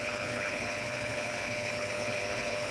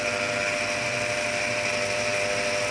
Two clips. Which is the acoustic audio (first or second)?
second